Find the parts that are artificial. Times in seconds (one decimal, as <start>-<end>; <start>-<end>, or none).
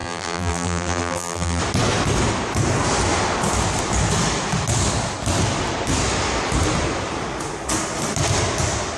0.0-1.6